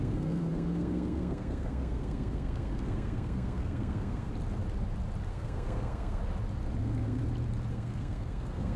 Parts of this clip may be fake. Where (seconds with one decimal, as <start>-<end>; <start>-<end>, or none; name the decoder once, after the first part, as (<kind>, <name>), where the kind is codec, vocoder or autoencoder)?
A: 0.0-4.3 (codec, SNAC); 5.3-6.2; 6.8-7.2; 7.7-8.8